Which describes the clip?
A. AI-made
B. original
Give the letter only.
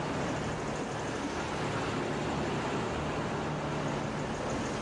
B